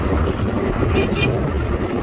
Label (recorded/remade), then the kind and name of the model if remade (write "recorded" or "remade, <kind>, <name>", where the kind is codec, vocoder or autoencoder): recorded